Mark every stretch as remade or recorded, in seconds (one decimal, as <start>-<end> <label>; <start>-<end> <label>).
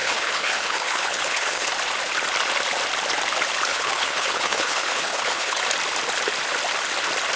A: 0.0-1.7 remade; 1.7-3.7 recorded; 3.7-5.6 remade; 5.6-7.4 recorded